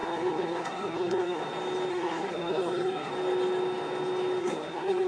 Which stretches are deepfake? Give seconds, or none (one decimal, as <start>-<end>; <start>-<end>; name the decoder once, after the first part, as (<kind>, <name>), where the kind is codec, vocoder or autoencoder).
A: 0.0-1.4 (codec, SNAC); 1.9-3.1; 4.4-5.1